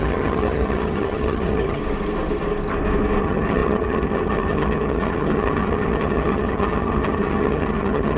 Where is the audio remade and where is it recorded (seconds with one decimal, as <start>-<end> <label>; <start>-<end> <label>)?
0.0-1.8 remade; 1.8-3.2 recorded; 3.2-8.2 remade